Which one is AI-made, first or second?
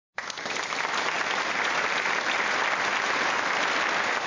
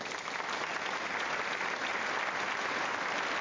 first